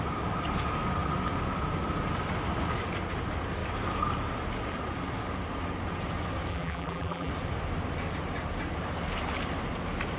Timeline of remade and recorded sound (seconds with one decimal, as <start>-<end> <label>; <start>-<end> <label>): 0.0-6.5 recorded; 6.5-7.3 remade; 7.3-10.2 recorded